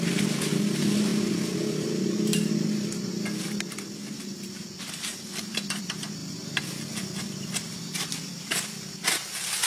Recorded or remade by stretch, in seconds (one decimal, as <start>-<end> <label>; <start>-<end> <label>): 0.0-9.7 recorded